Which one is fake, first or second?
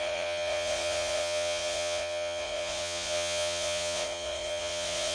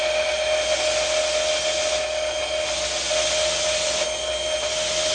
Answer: first